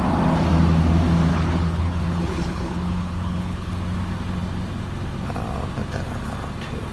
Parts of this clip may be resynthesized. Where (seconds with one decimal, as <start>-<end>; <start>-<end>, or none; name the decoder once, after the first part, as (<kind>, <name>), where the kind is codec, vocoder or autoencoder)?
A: 1.3-3.7 (codec, HILCodec)